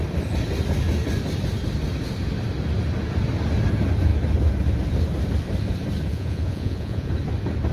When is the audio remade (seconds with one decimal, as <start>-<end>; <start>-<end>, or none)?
6.1-7.1